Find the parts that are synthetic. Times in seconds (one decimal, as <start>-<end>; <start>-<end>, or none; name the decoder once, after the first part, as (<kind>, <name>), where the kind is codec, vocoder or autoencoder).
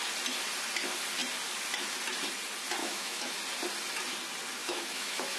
2.8-3.4 (autoencoder, DAC-VAE); 4.6-5.4